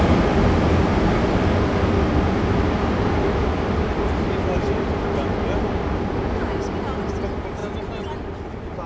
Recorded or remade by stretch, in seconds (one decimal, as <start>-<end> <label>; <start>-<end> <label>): 0.0-8.9 recorded